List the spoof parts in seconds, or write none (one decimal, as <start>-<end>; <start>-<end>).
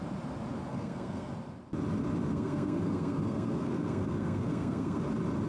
0.7-1.3; 2.3-5.0